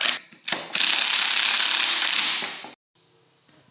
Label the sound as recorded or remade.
recorded